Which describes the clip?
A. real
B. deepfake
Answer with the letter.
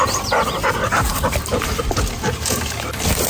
B